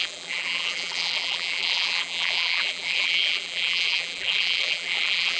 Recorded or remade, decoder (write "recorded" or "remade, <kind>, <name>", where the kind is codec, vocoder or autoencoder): remade, vocoder, BigVGAN v2